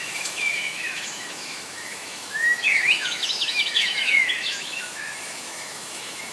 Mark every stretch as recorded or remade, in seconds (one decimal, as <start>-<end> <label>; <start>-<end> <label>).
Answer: 0.0-6.3 remade